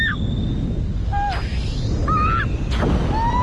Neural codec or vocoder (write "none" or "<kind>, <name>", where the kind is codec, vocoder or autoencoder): none